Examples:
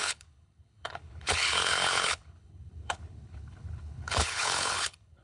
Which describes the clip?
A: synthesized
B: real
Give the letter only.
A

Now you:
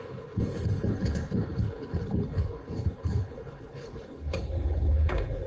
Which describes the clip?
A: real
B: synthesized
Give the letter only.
B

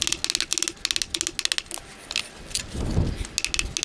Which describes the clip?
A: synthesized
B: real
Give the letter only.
B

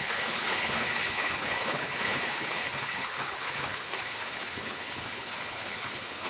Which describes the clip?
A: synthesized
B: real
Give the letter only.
A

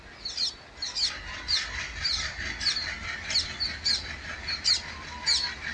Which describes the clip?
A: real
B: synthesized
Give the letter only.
A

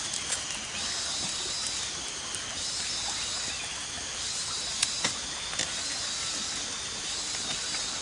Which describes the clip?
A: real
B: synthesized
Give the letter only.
A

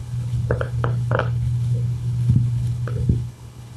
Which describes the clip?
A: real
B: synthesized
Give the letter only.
B